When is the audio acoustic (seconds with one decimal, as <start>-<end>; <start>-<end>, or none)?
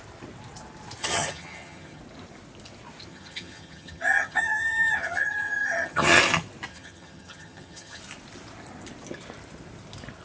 0.0-1.0; 2.0-3.1; 6.2-6.7; 8.0-10.2